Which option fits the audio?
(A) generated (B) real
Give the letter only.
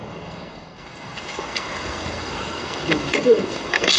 A